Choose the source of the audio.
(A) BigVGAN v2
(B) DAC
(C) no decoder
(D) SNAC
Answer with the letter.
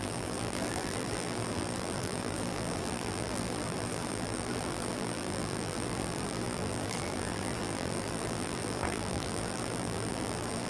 A